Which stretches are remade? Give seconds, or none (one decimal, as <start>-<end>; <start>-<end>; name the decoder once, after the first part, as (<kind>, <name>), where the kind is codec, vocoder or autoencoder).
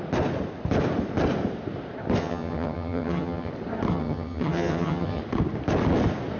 2.2-3.5 (vocoder, HiFi-GAN); 3.9-5.2